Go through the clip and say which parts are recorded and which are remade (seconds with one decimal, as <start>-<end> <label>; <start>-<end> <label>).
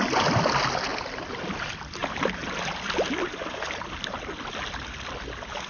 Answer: 0.0-5.7 recorded